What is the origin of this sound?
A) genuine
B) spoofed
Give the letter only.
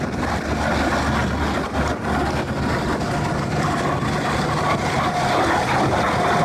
A